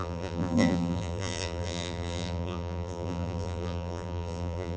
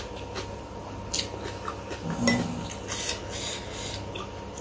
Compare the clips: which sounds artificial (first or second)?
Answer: first